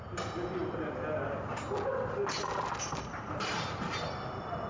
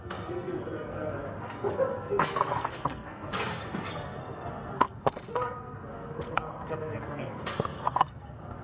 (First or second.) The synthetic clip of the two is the second